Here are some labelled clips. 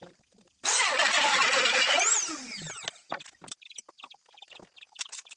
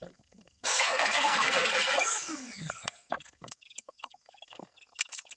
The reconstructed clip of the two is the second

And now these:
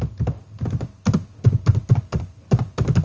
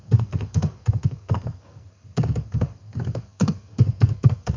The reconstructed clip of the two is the second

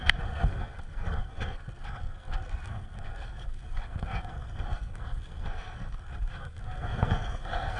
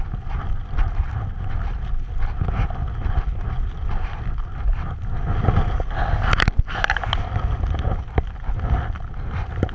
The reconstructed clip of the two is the first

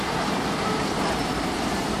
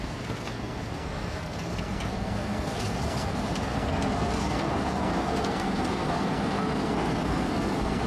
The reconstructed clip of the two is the second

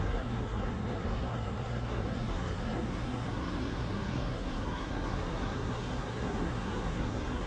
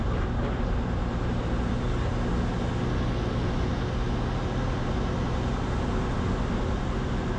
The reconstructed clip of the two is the first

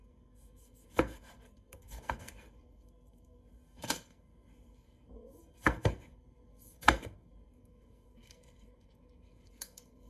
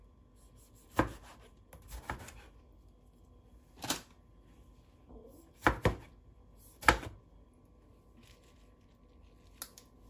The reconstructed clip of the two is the first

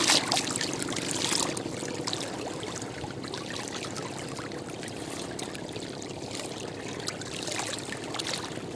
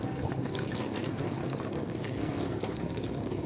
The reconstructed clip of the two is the second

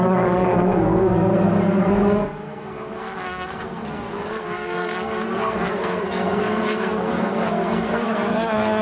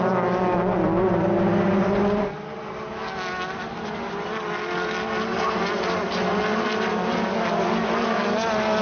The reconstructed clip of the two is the first